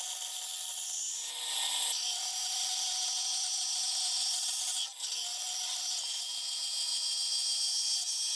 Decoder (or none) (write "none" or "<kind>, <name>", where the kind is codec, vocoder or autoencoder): none